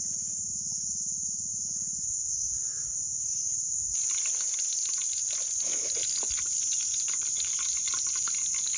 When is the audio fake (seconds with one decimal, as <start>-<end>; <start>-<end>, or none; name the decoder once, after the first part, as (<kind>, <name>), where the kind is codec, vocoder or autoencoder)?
none